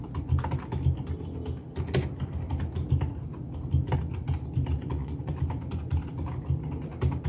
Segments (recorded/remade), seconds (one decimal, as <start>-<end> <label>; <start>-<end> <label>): 0.0-4.7 recorded; 4.7-5.3 remade; 5.3-7.3 recorded